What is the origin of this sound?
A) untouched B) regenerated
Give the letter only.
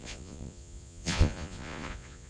B